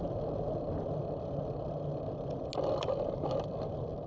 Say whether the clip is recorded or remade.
recorded